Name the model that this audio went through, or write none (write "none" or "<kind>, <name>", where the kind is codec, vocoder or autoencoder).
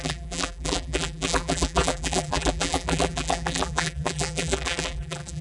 vocoder, BigVGAN v2